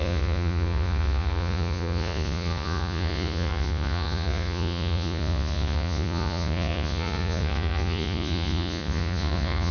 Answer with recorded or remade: remade